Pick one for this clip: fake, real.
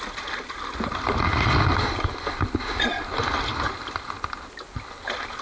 real